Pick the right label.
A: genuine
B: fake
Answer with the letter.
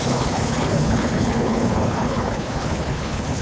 B